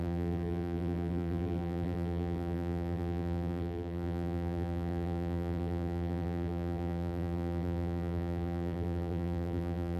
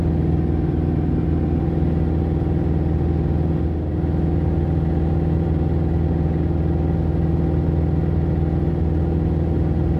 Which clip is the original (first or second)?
second